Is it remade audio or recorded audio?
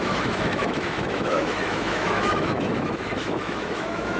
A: remade